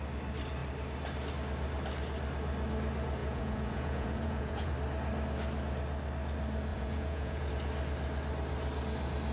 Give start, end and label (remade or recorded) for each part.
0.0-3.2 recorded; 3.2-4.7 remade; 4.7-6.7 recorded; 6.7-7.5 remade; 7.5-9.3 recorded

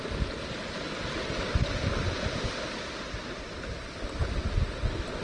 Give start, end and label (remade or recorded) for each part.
0.0-5.2 recorded

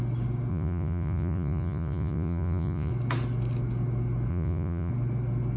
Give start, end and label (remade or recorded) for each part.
0.0-0.5 recorded; 0.5-2.9 remade; 2.9-4.3 recorded; 4.3-4.9 remade; 4.9-5.6 recorded

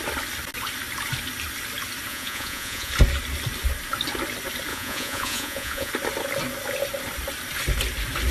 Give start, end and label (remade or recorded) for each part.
0.0-2.1 recorded; 2.1-2.9 remade; 2.9-4.7 recorded; 4.7-5.9 remade; 5.9-8.3 recorded

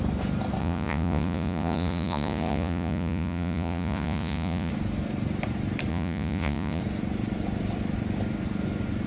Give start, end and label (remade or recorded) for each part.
0.0-0.6 recorded; 0.6-4.7 remade; 4.7-5.9 recorded; 5.9-6.8 remade; 6.8-9.1 recorded

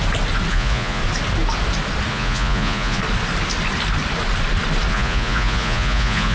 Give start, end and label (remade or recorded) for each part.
0.0-0.5 recorded; 0.5-1.0 remade; 1.0-2.1 recorded; 2.1-3.0 remade; 3.0-4.9 recorded; 4.9-6.3 remade